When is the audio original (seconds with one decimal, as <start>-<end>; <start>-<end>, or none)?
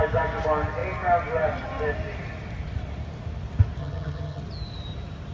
0.0-3.8; 4.4-5.3